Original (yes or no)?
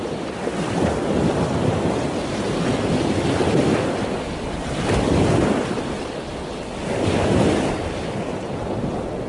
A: yes